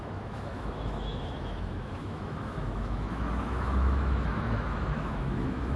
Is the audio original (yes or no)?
no